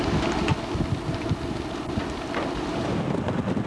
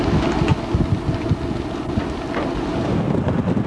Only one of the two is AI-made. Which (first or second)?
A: first